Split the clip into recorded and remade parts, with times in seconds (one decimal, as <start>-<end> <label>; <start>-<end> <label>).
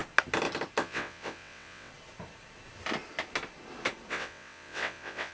0.0-0.8 recorded; 0.8-1.9 remade; 1.9-4.1 recorded; 4.1-5.3 remade